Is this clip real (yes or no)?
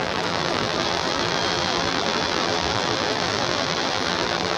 no